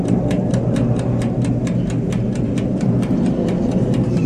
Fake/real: real